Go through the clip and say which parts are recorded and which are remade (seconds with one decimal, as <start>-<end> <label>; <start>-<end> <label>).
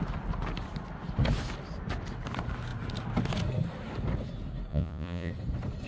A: 0.0-4.7 recorded; 4.7-5.3 remade; 5.3-5.9 recorded